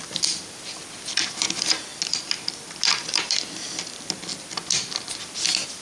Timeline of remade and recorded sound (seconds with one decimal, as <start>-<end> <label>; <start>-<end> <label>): 0.0-5.8 recorded